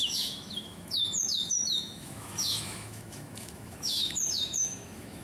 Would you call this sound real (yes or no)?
no